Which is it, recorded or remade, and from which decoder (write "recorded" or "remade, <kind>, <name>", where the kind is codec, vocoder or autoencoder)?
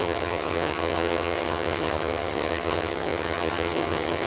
remade, vocoder, HiFi-GAN